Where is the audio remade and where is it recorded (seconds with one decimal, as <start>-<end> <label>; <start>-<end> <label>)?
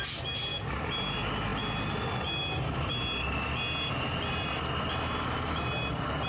0.0-6.3 recorded